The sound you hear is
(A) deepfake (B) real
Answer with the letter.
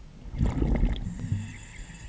B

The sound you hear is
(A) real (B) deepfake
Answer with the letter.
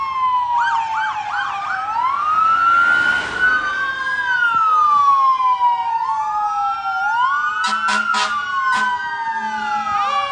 A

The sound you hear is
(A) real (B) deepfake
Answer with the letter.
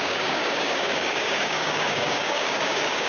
B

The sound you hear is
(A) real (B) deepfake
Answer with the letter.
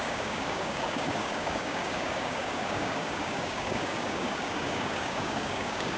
B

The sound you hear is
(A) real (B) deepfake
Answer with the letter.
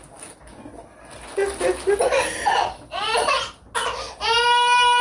A